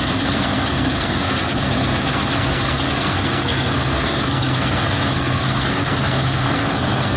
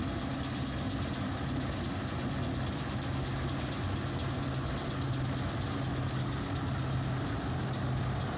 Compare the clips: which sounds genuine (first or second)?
second